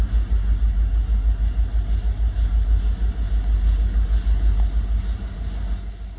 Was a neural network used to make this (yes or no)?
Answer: no